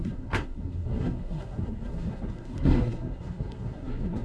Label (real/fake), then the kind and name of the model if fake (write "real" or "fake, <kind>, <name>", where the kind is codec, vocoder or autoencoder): fake, codec, SNAC